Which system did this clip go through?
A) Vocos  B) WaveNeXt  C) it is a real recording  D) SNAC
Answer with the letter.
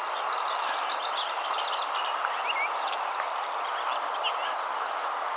C